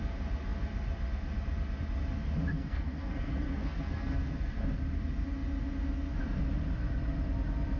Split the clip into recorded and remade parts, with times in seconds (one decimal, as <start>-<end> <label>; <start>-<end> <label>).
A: 0.0-2.5 recorded; 2.5-4.8 remade; 4.8-7.8 recorded